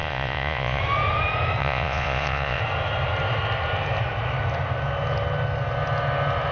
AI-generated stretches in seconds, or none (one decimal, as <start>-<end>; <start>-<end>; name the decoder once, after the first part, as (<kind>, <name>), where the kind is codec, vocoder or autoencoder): 0.0-0.8 (vocoder, Vocos); 1.6-2.6